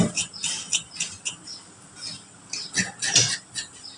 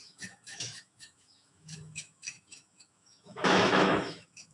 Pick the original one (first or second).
first